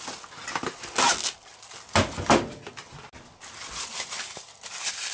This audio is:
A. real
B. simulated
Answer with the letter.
A